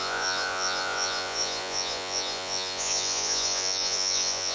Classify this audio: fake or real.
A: fake